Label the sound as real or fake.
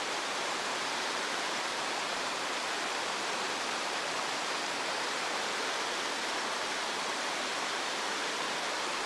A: fake